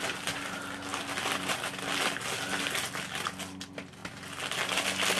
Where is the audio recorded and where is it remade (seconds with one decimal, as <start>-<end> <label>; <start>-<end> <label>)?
0.0-5.2 recorded